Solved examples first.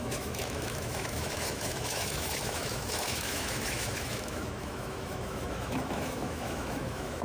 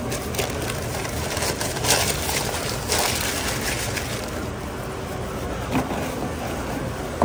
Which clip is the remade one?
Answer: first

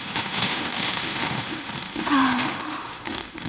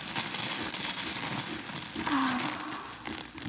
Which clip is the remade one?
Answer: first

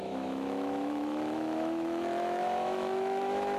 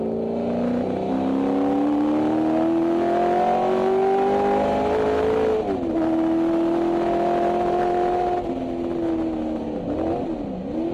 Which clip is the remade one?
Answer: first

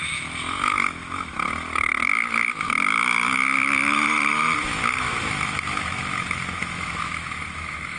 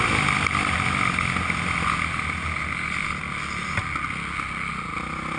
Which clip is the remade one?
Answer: first